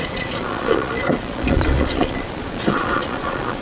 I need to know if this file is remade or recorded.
remade